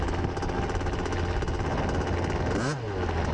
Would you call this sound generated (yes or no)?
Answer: no